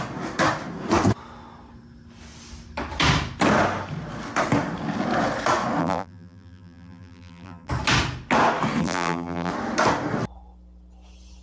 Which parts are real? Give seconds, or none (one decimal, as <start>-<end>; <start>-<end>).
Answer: 0.0-5.8; 7.7-8.8; 9.5-11.4